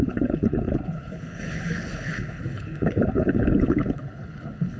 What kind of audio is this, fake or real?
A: fake